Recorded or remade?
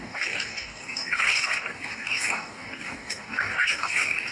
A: remade